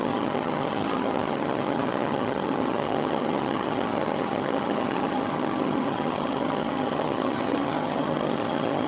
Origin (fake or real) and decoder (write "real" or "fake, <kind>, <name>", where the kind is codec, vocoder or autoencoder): fake, vocoder, HiFi-GAN